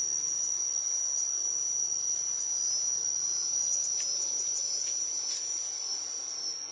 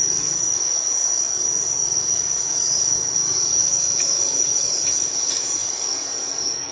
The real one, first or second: first